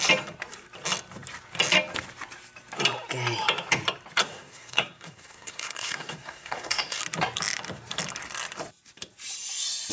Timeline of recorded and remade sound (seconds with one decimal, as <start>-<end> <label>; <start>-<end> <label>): 0.0-4.2 recorded; 4.2-7.0 remade; 7.0-9.9 recorded